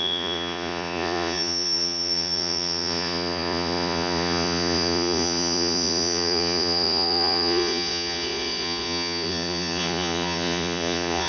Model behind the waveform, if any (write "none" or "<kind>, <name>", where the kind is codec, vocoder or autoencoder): vocoder, Vocos